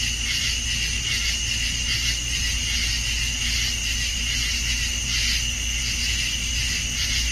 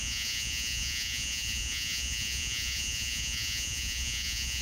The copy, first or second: second